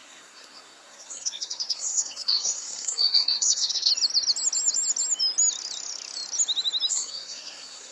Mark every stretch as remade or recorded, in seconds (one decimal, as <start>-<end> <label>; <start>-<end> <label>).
0.0-3.9 remade; 3.9-6.9 recorded; 6.9-7.9 remade